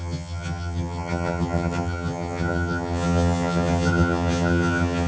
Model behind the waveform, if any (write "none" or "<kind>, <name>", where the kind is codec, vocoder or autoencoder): vocoder, HiFi-GAN